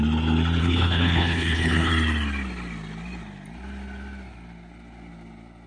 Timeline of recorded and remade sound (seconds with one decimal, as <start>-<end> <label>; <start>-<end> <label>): 0.0-0.6 recorded; 0.6-1.9 remade; 1.9-5.7 recorded